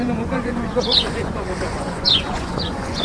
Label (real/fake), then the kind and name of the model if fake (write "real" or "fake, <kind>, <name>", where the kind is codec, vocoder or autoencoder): fake, vocoder, Vocos